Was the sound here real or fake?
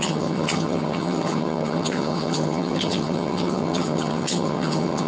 fake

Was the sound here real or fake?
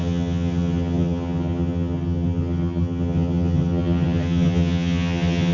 fake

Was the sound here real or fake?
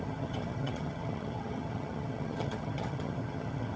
fake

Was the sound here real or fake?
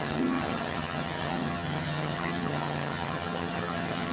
fake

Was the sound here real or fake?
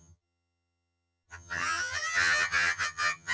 fake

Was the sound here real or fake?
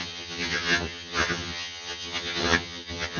fake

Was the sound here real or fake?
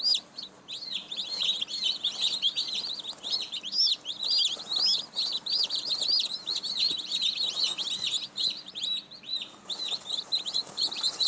real